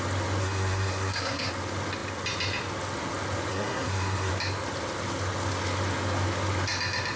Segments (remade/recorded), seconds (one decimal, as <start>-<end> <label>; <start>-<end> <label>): 0.0-0.4 recorded; 0.4-1.5 remade; 1.5-3.5 recorded; 3.5-4.3 remade; 4.3-7.2 recorded